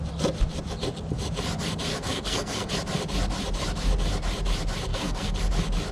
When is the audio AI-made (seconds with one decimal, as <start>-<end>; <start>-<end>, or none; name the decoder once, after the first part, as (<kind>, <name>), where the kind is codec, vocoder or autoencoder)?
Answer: 1.9-2.7 (codec, SNAC); 4.9-5.4